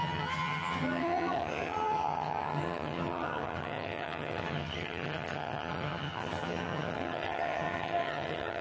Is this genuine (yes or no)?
no